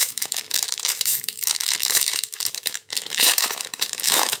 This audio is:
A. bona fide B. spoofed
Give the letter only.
B